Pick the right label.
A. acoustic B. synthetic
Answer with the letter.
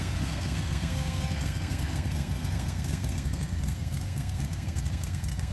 B